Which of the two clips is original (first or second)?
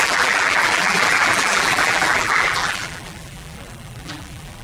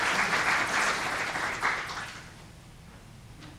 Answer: second